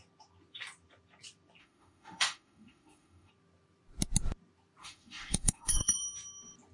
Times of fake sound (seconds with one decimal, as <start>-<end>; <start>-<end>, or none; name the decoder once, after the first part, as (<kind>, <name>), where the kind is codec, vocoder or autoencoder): 1.6-3.3 (autoencoder, DAC-VAE); 4.8-6.0